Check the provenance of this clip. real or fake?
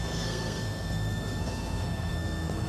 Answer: fake